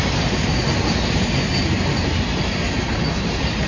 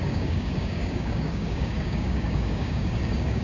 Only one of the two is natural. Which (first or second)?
first